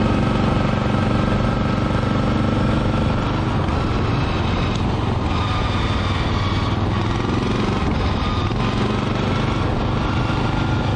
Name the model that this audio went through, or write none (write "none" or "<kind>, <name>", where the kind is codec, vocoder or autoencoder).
none